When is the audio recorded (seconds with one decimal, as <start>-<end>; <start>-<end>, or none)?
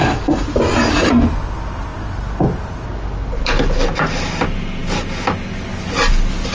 0.0-6.5